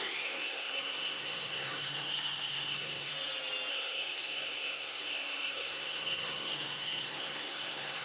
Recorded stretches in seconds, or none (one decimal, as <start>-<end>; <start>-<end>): 3.1-3.7